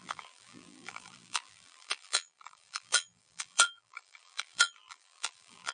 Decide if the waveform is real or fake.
fake